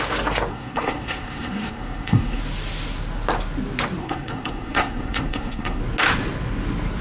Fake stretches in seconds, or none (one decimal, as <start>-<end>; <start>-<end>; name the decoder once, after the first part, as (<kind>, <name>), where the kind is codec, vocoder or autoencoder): 0.5-2.4 (codec, SNAC); 4.0-5.8